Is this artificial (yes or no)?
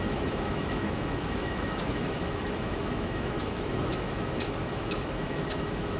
yes